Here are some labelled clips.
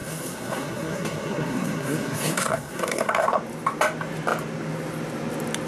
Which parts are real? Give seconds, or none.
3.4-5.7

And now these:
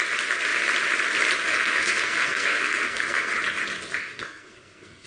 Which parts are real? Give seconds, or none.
0.0-1.5; 3.3-4.0

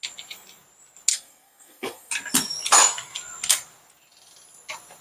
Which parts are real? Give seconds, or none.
0.0-1.1; 2.1-5.0

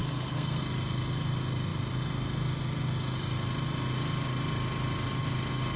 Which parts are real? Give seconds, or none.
0.6-5.8

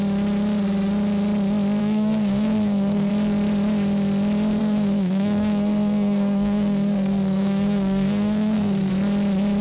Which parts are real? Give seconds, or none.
0.0-1.8; 3.1-4.6; 8.9-9.6

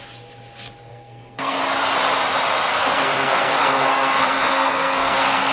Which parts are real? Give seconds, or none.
0.0-0.9; 1.6-2.7